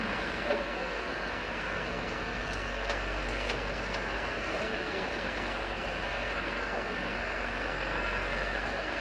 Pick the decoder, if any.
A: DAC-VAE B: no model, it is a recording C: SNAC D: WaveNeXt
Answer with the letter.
C